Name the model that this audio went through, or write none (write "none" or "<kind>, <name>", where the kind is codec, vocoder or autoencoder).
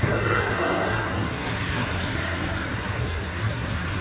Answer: codec, SNAC